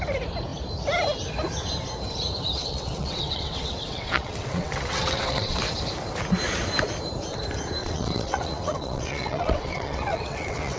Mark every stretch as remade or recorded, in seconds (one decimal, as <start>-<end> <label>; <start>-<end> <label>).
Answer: 0.0-2.6 recorded; 2.6-5.6 remade; 5.6-7.8 recorded; 7.8-10.8 remade